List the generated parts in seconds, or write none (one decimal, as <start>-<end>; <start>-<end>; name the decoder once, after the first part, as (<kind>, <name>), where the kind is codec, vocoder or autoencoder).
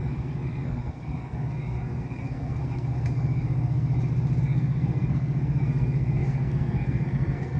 0.0-3.9 (codec, SNAC); 4.4-7.6